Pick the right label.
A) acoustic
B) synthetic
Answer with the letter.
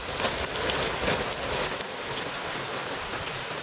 A